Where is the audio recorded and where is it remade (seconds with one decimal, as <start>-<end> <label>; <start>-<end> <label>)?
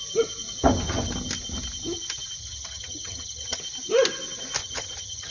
0.0-2.4 recorded; 2.4-3.6 remade; 3.6-4.6 recorded; 4.6-5.3 remade